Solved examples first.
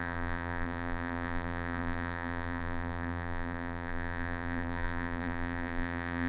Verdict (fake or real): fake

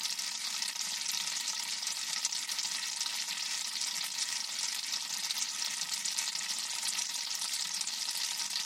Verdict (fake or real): fake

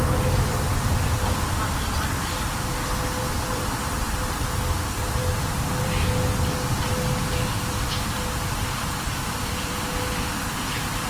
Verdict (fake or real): fake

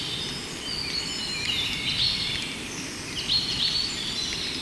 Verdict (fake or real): real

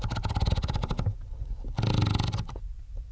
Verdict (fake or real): real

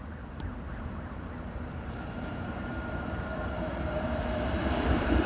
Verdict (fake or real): fake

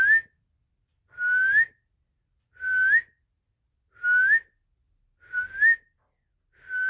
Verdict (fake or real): real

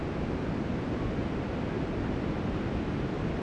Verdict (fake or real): real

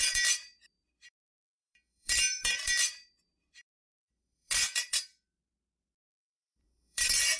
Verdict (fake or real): fake